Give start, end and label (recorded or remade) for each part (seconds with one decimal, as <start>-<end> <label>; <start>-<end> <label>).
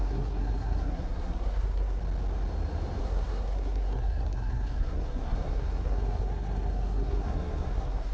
0.0-2.0 remade; 2.0-3.0 recorded; 3.0-8.1 remade